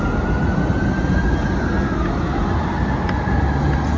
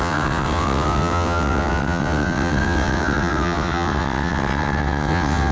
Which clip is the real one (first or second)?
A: first